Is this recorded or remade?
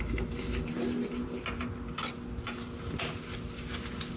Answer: recorded